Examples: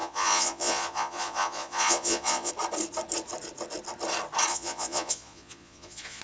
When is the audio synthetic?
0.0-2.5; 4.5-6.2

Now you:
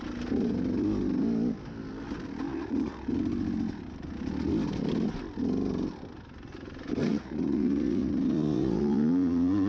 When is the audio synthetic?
2.5-3.1; 7.0-9.7